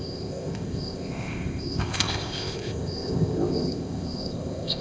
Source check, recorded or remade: remade